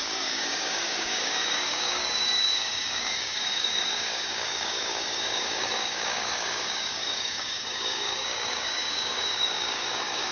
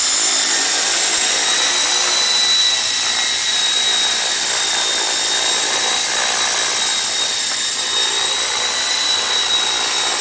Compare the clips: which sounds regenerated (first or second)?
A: first